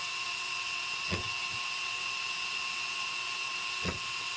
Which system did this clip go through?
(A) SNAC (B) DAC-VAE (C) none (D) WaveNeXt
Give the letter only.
D